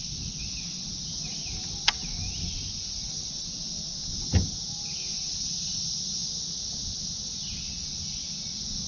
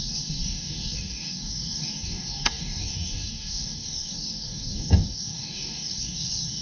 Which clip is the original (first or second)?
first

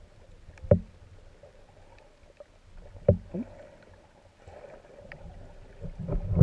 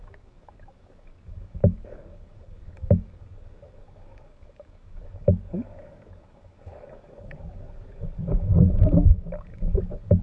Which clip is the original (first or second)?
first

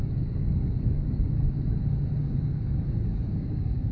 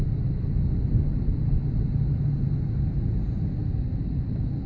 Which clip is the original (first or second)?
second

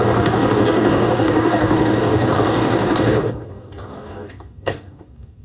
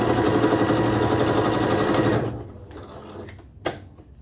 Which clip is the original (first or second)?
second